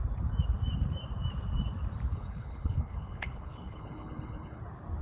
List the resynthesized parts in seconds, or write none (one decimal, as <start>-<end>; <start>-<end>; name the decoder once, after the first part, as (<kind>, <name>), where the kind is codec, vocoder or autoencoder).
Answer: 2.1-4.6 (codec, HILCodec)